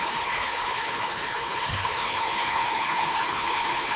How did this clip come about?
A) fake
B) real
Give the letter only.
A